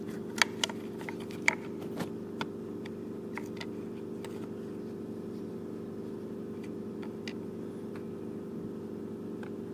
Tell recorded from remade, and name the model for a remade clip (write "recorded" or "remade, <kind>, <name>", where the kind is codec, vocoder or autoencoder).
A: recorded